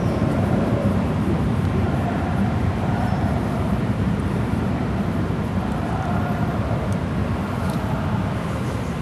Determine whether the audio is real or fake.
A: fake